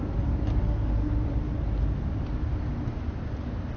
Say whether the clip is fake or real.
real